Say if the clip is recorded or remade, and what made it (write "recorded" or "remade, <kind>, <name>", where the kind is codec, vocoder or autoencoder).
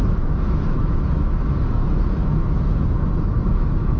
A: remade, autoencoder, DAC-VAE